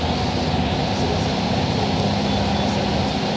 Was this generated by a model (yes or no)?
no